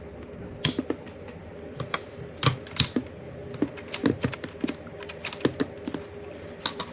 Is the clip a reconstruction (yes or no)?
no